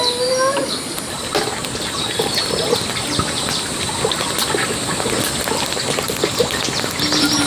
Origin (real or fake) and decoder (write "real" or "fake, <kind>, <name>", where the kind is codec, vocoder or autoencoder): real